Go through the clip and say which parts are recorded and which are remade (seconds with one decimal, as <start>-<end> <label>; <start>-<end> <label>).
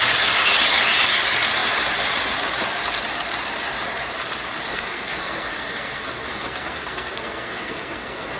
0.0-4.7 recorded; 4.7-8.4 remade